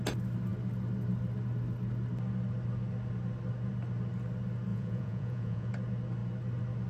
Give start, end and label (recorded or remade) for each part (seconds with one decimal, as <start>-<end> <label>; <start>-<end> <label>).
0.0-4.7 recorded; 4.7-5.7 remade; 5.7-6.9 recorded